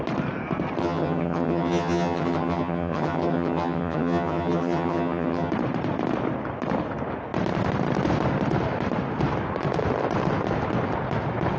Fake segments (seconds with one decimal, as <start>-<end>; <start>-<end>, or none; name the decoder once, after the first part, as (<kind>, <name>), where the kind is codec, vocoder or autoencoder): 0.8-5.5 (vocoder, HiFi-GAN)